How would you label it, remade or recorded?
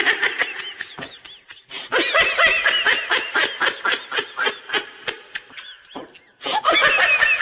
recorded